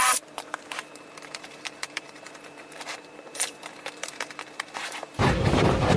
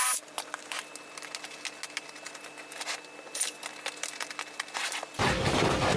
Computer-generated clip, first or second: first